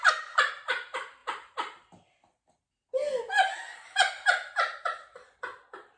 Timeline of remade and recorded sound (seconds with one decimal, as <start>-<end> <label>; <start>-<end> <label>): 0.0-6.0 recorded